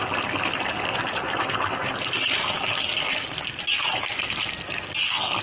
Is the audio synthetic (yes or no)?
no